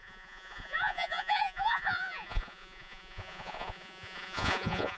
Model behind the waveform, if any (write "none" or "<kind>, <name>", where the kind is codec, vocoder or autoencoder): vocoder, Vocos